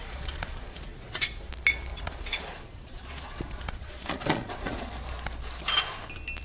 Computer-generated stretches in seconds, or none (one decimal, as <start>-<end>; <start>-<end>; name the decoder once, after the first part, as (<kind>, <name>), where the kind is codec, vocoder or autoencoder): 0.0-1.5 (vocoder, Vocos); 1.9-4.9